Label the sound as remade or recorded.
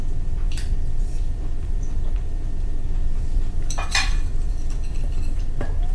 remade